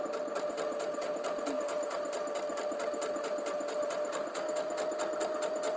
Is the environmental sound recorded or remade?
recorded